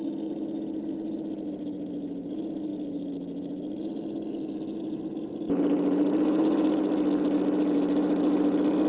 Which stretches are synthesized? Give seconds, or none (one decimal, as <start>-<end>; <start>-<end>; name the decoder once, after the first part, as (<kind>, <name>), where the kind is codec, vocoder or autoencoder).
none

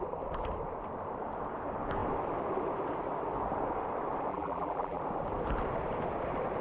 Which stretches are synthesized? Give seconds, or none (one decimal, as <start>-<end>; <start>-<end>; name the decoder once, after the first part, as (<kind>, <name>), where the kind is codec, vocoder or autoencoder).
4.3-5.0 (vocoder, BigVGAN v2)

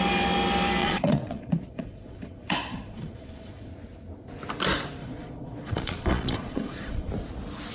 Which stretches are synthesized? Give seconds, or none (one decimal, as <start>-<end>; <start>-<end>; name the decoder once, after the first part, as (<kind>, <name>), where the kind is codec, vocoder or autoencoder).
0.8-3.7 (vocoder, Vocos); 5.0-7.1

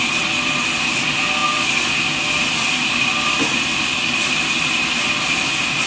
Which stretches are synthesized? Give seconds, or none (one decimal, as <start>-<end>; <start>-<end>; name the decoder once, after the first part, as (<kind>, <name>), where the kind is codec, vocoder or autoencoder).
none

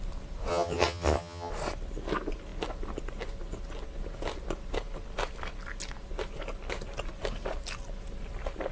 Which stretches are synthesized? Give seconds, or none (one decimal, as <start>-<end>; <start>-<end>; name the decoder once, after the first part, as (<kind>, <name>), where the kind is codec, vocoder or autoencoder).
0.5-1.5 (vocoder, HiFi-GAN)

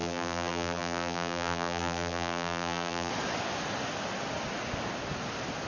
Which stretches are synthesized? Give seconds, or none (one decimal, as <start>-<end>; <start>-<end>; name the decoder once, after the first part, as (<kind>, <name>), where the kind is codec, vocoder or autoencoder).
0.0-3.1 (vocoder, BigVGAN v2)

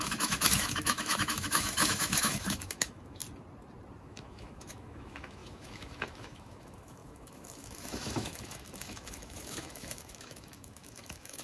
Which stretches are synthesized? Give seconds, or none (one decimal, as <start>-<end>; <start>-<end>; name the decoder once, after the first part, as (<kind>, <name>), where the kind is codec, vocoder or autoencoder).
0.0-3.2 (autoencoder, DAC-VAE); 4.0-11.4